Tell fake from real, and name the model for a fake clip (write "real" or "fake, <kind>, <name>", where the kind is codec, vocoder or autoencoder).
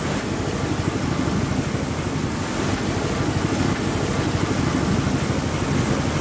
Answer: real